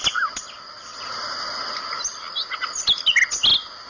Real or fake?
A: real